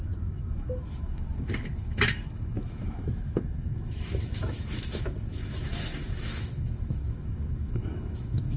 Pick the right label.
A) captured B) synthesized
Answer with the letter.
B